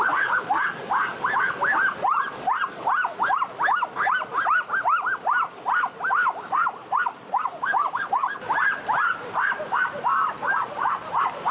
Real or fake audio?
real